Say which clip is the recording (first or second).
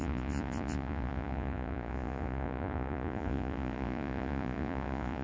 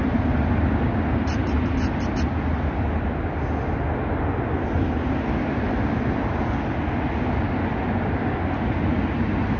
second